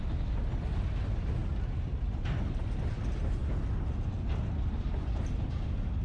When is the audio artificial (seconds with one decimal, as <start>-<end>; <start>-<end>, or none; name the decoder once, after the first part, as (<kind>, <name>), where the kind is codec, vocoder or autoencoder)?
none